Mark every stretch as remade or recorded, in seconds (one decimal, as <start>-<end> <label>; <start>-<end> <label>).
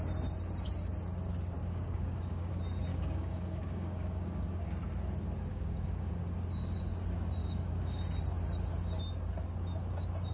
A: 0.0-1.6 recorded; 1.6-2.5 remade; 2.5-2.9 recorded; 2.9-4.6 remade; 4.6-5.5 recorded; 5.5-6.1 remade; 6.1-7.4 recorded; 7.4-8.0 remade; 8.0-10.3 recorded